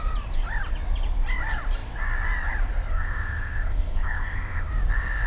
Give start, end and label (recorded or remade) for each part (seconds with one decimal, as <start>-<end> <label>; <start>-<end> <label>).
0.0-2.9 recorded; 2.9-4.7 remade; 4.7-5.3 recorded